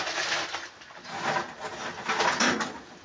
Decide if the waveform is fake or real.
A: real